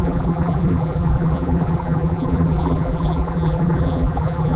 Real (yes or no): no